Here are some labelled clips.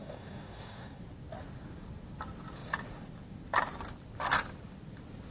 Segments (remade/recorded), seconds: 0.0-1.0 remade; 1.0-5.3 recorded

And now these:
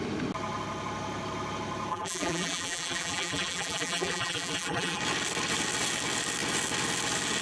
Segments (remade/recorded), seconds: 0.0-1.9 recorded; 1.9-5.0 remade; 5.0-7.4 recorded

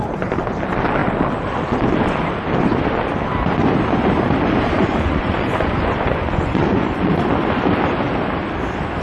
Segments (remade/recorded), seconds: 0.0-4.8 recorded; 4.8-7.1 remade; 7.1-9.0 recorded

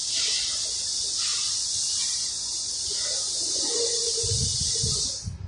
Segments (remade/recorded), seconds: 0.0-1.3 recorded; 1.3-4.1 remade; 4.1-5.5 recorded

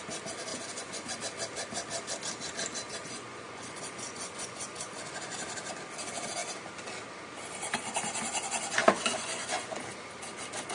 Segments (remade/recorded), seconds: 0.0-0.5 recorded; 0.5-1.2 remade; 1.2-3.0 recorded; 3.0-5.4 remade; 5.4-8.8 recorded; 8.8-9.8 remade; 9.8-10.7 recorded

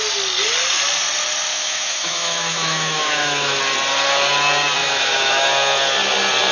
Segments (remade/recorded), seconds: 0.0-1.5 recorded; 1.5-3.6 remade; 3.6-4.8 recorded; 4.8-5.5 remade; 5.5-6.5 recorded